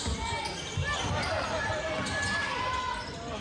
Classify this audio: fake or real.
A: real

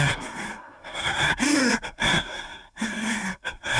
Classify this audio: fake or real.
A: fake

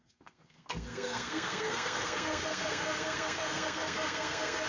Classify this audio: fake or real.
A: fake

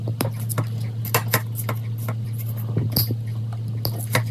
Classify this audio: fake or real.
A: real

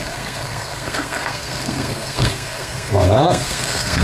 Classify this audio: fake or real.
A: fake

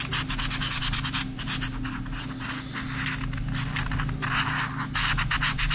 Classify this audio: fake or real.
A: real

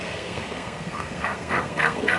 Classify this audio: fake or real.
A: fake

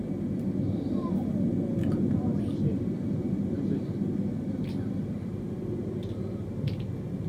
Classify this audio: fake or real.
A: real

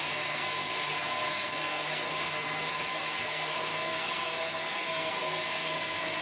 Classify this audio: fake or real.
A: fake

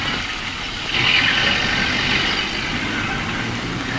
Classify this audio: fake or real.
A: real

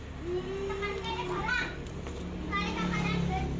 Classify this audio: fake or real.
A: real